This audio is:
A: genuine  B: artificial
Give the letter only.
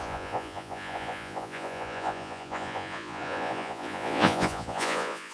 B